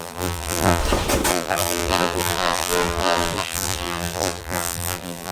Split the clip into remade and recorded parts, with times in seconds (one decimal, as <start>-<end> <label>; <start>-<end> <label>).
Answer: 0.0-0.8 remade; 0.8-1.3 recorded; 1.3-5.3 remade